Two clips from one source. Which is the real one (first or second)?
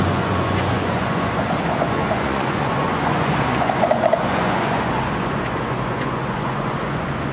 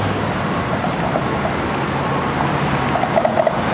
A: second